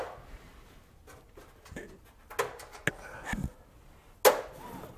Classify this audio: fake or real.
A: real